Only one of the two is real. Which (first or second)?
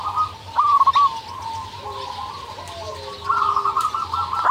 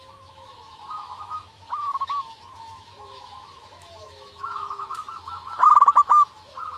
first